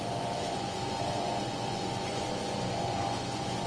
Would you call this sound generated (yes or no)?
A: yes